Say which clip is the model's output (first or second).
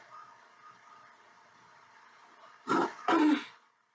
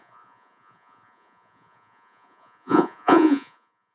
second